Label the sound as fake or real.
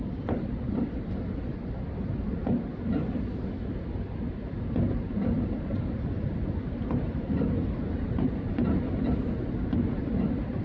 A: fake